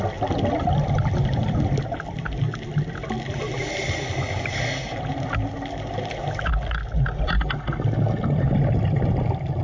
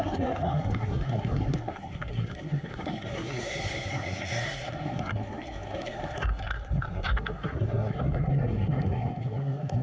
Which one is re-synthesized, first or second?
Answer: second